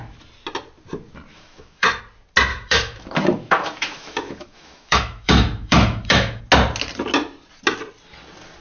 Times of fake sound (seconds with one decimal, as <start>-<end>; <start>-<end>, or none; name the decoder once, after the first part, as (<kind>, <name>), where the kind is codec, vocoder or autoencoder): 1.3-2.0 (autoencoder, DAC-VAE); 2.5-6.4

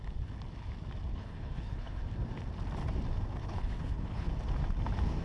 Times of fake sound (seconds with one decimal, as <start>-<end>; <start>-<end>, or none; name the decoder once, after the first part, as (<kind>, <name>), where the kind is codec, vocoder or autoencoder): 1.1-2.0 (codec, HILCodec); 3.4-4.3

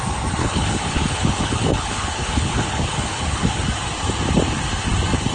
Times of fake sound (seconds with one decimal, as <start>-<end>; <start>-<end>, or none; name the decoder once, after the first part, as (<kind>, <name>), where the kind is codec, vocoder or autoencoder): 0.4-3.6 (codec, HILCodec)

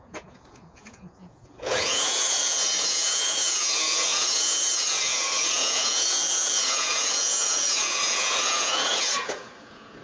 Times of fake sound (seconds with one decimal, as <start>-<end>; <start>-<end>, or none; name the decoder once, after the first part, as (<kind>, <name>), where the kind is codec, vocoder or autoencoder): 0.0-10.0 (vocoder, Vocos)

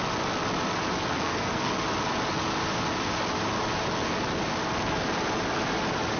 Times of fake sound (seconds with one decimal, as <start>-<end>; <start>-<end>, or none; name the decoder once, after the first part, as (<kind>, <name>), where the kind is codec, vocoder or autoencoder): 1.1-1.7 (codec, SNAC)

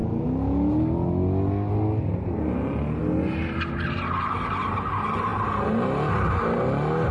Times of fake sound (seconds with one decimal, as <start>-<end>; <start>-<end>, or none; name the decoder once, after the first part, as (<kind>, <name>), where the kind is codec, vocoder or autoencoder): none

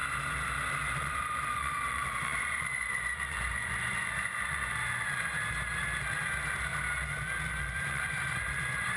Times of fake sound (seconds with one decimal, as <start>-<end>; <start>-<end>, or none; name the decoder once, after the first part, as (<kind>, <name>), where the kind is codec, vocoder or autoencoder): 1.0-5.3 (vocoder, Vocos); 7.6-9.0

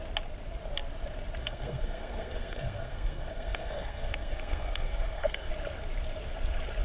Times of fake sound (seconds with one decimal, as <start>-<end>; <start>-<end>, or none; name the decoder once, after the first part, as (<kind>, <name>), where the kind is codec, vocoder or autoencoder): 1.4-5.5 (codec, SNAC)